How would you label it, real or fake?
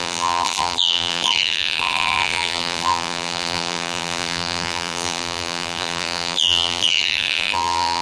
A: fake